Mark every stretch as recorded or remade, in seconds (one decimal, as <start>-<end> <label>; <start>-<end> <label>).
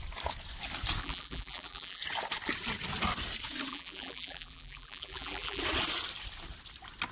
0.0-1.0 recorded; 1.0-2.0 remade; 2.0-3.7 recorded; 3.7-5.6 remade; 5.6-7.1 recorded